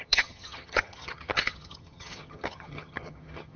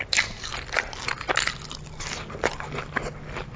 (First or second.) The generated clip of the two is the first